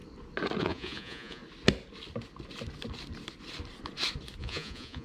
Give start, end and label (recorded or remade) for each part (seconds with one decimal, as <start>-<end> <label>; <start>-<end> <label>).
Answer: 0.0-0.6 recorded; 0.6-1.4 remade; 1.4-4.4 recorded; 4.4-5.0 remade